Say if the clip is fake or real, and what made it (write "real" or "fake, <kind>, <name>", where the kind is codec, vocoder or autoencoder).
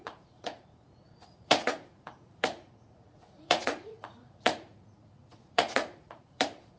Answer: fake, vocoder, Vocos